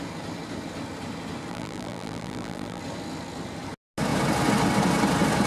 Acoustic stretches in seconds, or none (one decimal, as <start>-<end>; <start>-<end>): 0.0-1.5; 2.8-5.5